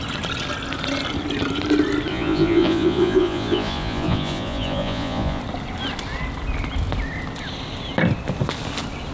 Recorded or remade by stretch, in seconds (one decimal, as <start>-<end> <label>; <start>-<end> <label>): 0.0-2.1 recorded; 2.1-5.4 remade; 5.4-9.1 recorded